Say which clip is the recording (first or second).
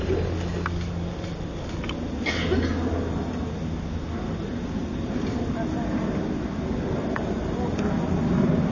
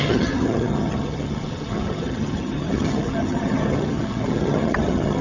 first